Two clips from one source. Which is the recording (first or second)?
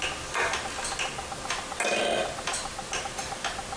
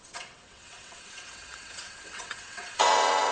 first